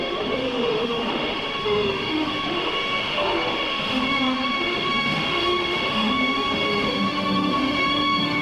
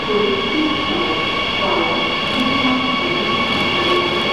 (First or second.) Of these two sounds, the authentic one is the second